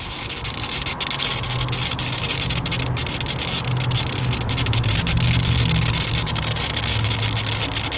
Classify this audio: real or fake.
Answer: real